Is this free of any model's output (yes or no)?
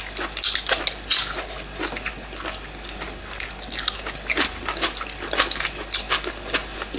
yes